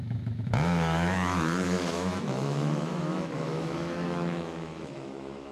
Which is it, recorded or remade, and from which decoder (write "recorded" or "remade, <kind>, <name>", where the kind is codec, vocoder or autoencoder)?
remade, autoencoder, DAC-VAE